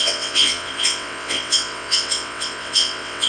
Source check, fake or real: fake